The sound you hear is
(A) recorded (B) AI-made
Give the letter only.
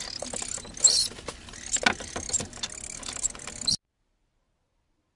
A